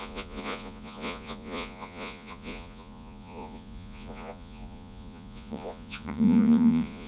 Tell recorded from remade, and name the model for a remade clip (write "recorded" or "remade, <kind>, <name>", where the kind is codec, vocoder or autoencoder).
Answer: remade, vocoder, Vocos